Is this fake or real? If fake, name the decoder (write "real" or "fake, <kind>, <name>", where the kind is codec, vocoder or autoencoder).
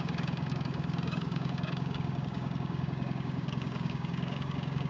fake, codec, DAC